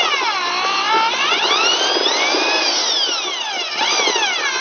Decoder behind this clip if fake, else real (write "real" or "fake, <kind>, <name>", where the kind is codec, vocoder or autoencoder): real